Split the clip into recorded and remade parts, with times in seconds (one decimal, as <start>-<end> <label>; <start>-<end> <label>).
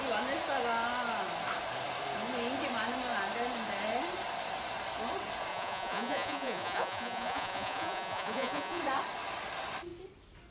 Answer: 0.0-5.5 recorded; 5.5-8.8 remade; 8.8-10.5 recorded